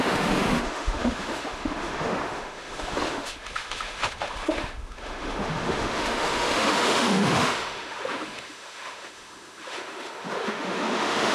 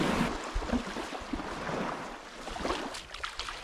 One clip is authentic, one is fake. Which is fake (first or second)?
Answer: first